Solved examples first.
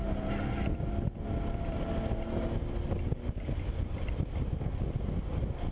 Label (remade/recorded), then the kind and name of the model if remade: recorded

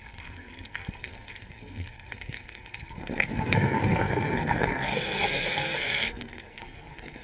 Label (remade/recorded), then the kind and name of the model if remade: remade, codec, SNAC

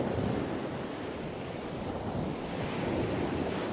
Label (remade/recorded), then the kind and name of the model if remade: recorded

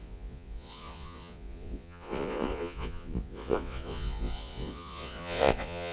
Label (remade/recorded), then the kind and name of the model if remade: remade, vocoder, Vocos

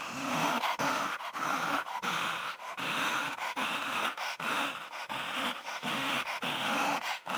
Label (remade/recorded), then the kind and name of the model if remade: remade, autoencoder, DAC-VAE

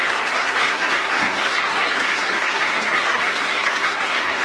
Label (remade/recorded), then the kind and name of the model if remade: remade, codec, SNAC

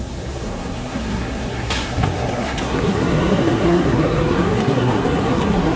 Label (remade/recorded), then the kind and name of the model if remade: remade, codec, SNAC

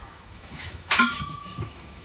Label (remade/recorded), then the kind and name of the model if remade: remade, autoencoder, DAC-VAE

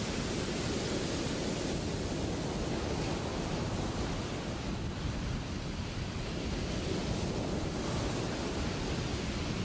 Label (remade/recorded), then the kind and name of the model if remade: recorded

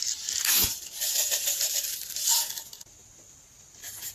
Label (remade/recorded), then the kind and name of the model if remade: recorded